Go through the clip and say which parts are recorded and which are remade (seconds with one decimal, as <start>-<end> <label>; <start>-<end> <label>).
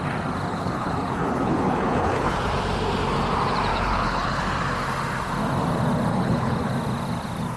0.0-0.5 recorded; 0.5-2.4 remade; 2.4-3.7 recorded; 3.7-4.4 remade; 4.4-6.1 recorded; 6.1-6.7 remade; 6.7-7.6 recorded